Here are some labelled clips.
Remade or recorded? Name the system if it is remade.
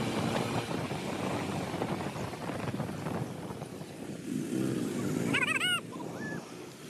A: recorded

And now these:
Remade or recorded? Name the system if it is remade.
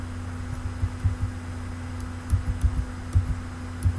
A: recorded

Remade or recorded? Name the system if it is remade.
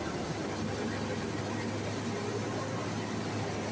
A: recorded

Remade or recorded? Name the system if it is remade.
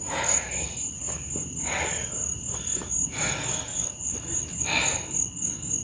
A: recorded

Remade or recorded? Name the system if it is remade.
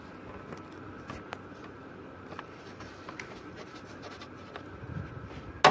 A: recorded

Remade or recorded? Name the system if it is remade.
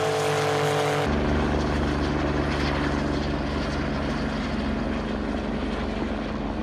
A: recorded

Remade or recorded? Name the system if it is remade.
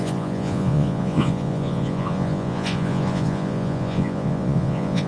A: remade, vocoder, Vocos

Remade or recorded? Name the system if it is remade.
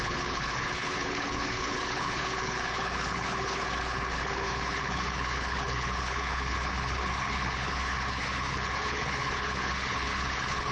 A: remade, codec, HILCodec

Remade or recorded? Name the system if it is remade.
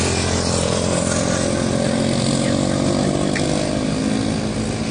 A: recorded